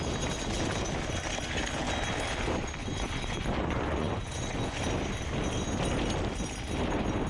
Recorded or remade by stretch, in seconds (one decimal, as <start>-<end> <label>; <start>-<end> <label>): 0.0-2.8 recorded; 2.8-4.8 remade; 4.8-7.3 recorded